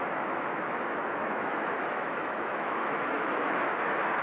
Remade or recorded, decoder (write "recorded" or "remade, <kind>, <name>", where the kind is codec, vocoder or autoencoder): remade, autoencoder, DAC-VAE